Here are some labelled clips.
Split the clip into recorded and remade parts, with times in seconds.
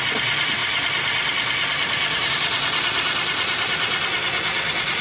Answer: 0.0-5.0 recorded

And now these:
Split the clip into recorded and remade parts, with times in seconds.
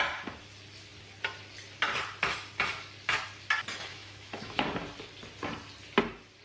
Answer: 0.0-3.9 recorded; 3.9-4.6 remade; 4.6-6.4 recorded